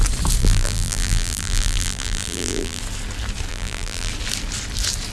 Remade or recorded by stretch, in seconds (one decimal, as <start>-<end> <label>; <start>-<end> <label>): 0.0-0.4 recorded; 0.4-2.8 remade; 2.8-3.5 recorded; 3.5-4.1 remade; 4.1-5.1 recorded